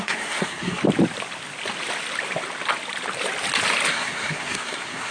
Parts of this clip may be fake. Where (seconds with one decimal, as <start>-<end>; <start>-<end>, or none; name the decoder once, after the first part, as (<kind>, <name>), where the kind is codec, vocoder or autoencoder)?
0.0-0.8 (codec, SNAC); 3.9-5.1